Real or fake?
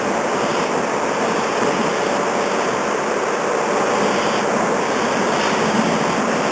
real